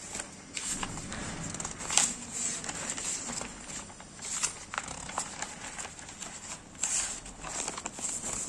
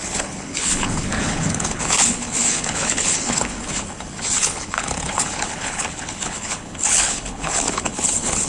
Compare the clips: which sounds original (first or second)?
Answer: first